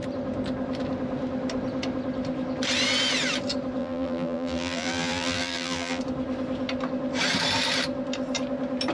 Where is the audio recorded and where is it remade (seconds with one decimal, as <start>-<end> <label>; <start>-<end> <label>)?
0.0-3.8 recorded; 3.8-6.0 remade; 6.0-8.9 recorded